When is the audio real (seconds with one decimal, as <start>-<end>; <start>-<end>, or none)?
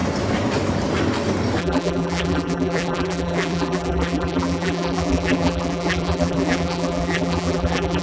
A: 0.0-1.6